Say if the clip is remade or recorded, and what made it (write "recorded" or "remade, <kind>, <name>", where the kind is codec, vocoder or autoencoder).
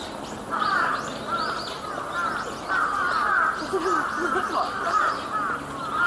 remade, vocoder, BigVGAN v2